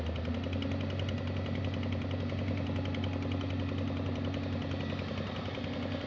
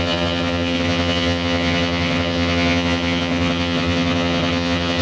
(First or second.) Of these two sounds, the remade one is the second